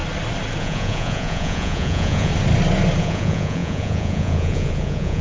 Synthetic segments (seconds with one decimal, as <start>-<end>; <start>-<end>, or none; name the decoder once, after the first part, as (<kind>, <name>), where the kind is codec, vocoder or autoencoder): 0.6-2.3 (vocoder, Vocos); 3.0-5.2